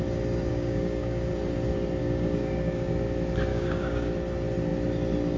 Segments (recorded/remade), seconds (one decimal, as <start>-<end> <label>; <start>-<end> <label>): 0.0-0.5 recorded; 0.5-1.3 remade; 1.3-2.0 recorded; 2.0-2.9 remade; 2.9-3.5 recorded; 3.5-4.1 remade; 4.1-5.4 recorded